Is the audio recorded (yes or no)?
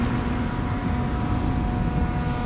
yes